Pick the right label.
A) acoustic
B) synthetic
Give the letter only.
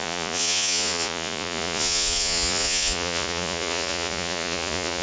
B